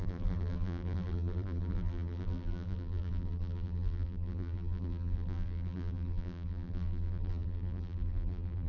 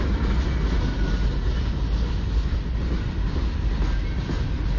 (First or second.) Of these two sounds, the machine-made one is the first